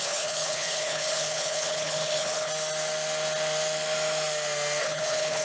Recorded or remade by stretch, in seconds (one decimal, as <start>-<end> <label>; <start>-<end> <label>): 0.0-2.5 remade; 2.5-4.8 recorded; 4.8-5.4 remade